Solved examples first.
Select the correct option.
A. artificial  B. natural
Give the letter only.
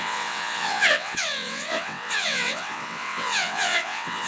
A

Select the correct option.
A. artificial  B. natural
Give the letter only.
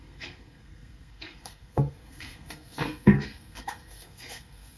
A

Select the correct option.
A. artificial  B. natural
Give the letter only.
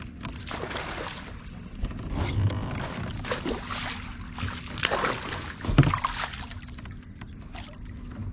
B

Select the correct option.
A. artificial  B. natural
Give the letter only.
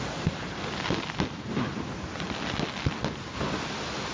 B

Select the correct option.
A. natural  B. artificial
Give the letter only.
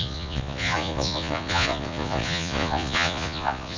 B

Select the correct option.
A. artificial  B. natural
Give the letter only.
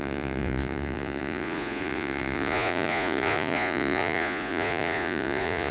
A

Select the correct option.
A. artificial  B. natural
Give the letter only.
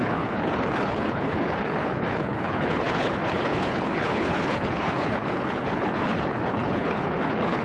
A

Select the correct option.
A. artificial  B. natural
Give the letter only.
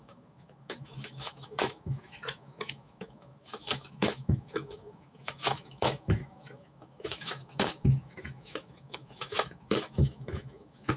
A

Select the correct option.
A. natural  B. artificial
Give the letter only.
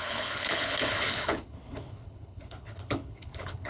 B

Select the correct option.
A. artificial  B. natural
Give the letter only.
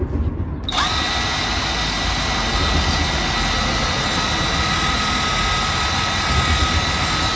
B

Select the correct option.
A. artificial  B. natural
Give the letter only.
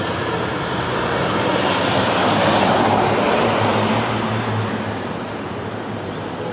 A